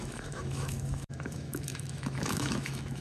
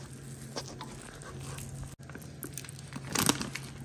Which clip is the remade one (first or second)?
first